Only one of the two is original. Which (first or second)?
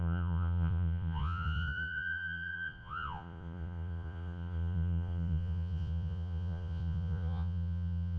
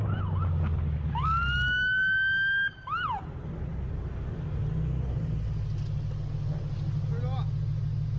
second